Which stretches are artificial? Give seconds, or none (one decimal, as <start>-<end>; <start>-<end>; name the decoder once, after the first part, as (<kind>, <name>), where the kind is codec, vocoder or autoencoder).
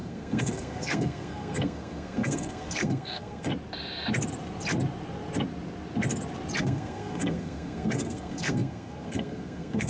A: 0.0-3.5 (codec, SNAC); 6.6-9.9